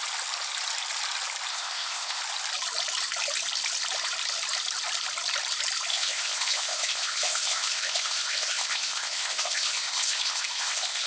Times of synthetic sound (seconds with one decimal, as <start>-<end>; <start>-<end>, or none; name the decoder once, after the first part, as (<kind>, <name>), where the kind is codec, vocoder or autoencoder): 1.5-2.2 (codec, ZipCodec); 5.9-11.1